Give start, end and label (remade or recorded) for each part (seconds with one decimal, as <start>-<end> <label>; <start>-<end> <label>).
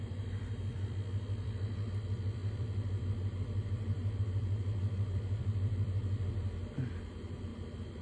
0.0-7.5 remade; 7.5-8.0 recorded